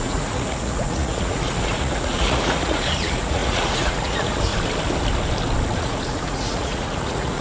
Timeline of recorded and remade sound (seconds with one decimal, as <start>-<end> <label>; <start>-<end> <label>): 0.0-4.5 remade; 4.5-5.8 recorded; 5.8-7.4 remade